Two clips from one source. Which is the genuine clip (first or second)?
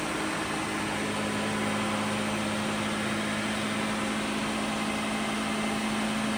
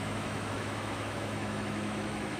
first